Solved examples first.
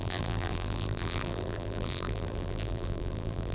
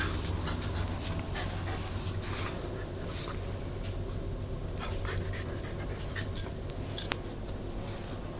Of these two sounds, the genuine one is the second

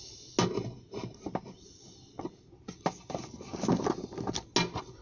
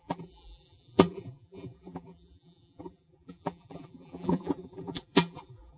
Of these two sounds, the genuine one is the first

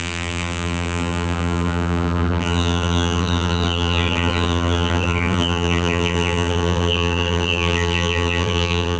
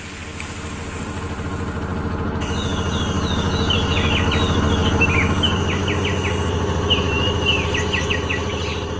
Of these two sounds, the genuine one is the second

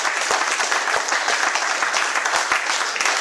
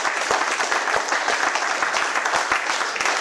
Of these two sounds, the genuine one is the first